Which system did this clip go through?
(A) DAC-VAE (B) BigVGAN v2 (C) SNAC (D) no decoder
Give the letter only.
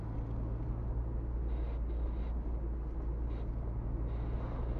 D